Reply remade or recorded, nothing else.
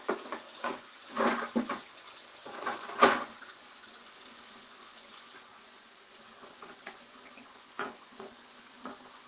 remade